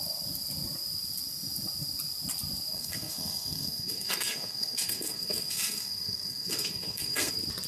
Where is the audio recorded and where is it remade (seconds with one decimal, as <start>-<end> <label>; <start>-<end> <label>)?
0.0-2.7 recorded; 2.7-7.3 remade; 7.3-7.7 recorded